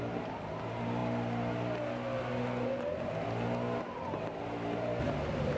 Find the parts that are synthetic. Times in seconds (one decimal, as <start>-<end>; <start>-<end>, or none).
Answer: none